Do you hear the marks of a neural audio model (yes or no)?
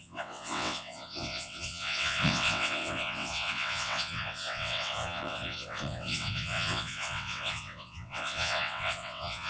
yes